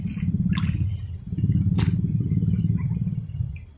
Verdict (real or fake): real